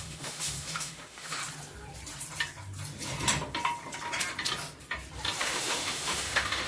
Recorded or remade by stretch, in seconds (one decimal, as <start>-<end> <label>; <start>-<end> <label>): 0.0-1.4 remade; 1.4-5.4 recorded; 5.4-6.7 remade